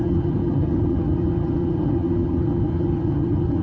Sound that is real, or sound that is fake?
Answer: fake